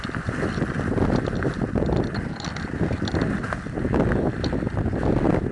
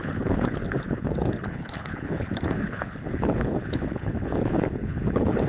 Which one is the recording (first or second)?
first